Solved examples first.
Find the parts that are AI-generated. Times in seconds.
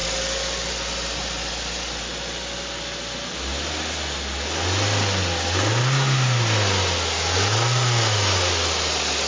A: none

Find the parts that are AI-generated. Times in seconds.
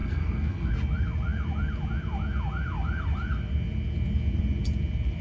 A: 0.0-0.7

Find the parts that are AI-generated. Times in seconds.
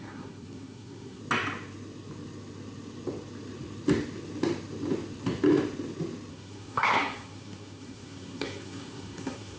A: 0.0-1.2; 6.3-9.6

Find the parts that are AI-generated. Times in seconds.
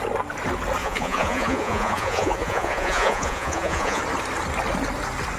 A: 0.8-4.0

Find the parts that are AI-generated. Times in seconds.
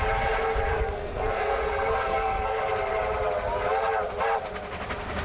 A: 0.7-2.6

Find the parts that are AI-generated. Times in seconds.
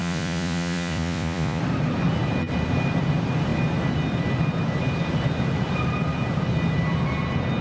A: 0.0-1.6